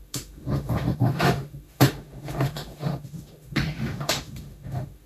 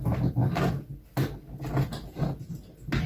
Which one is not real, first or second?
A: first